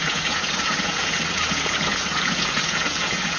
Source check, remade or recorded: remade